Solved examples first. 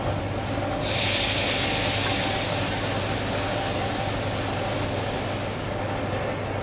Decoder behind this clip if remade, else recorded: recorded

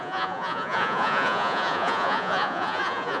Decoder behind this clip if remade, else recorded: remade, vocoder, Vocos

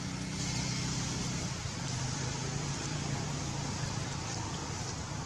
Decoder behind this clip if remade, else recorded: remade, vocoder, BigVGAN v2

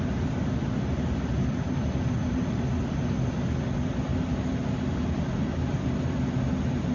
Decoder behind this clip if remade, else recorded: recorded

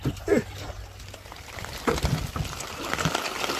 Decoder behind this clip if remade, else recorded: recorded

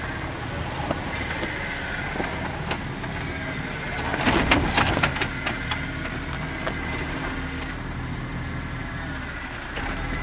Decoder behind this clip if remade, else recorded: recorded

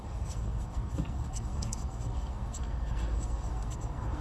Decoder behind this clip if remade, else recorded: remade, codec, SNAC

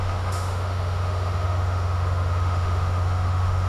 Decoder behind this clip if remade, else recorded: remade, autoencoder, DAC-VAE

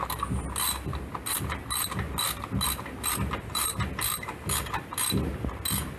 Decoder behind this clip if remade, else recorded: recorded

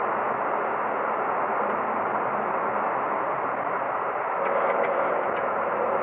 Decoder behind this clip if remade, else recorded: recorded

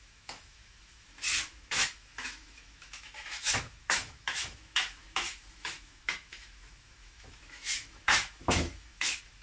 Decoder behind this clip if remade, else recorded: remade, autoencoder, DAC-VAE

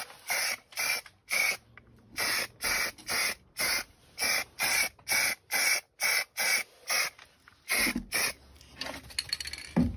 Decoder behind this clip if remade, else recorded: recorded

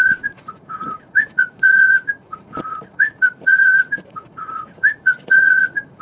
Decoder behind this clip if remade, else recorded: remade, vocoder, Vocos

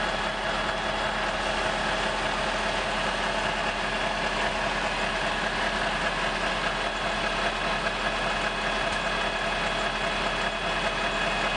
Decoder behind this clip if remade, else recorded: recorded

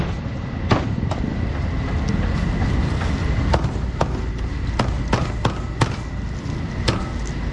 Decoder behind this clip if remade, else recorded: recorded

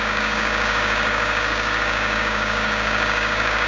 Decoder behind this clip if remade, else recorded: remade, codec, DAC